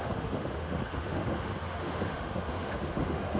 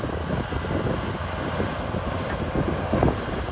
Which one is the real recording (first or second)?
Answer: second